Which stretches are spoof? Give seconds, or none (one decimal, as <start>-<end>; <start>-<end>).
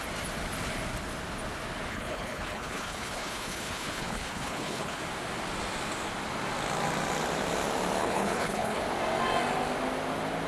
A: 1.9-5.0; 8.0-8.8